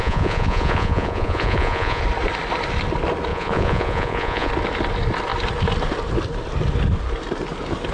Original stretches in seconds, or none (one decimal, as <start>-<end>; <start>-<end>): 2.0-3.3; 4.5-7.9